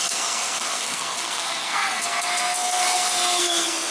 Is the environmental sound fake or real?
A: fake